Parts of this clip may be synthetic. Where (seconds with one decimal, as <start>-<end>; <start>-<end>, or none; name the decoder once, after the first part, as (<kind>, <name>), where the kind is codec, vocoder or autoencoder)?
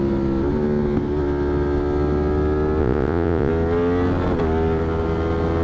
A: 2.8-3.5 (vocoder, Vocos)